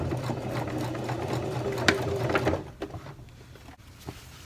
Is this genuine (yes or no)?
yes